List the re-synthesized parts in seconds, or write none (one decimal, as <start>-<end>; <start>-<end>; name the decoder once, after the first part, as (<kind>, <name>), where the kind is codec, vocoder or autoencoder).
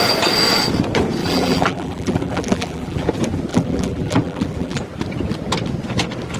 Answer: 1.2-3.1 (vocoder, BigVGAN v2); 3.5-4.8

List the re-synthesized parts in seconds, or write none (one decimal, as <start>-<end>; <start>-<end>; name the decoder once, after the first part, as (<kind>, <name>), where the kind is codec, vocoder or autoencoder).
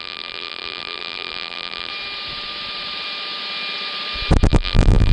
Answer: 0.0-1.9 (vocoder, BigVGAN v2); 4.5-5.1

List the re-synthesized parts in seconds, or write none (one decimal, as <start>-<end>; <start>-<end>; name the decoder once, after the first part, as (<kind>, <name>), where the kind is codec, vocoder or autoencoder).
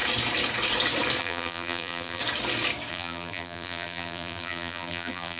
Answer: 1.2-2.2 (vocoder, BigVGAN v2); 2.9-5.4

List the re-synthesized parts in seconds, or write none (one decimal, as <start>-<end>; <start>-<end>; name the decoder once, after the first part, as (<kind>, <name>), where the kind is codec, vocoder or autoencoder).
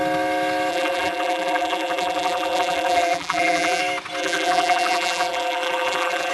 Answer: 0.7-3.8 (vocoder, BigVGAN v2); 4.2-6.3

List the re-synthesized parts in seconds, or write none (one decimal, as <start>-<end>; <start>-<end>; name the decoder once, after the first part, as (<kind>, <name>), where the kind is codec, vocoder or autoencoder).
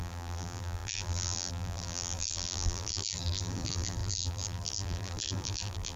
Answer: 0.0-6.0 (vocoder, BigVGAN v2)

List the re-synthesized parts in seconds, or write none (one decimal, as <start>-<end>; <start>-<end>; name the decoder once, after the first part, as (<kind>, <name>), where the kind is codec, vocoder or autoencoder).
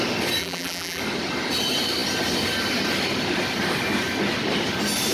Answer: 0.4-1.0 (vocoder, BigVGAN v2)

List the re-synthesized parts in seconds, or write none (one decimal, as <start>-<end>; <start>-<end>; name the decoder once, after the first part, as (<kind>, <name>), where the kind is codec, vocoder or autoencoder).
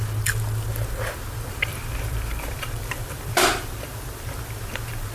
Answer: 1.7-5.1 (vocoder, BigVGAN v2)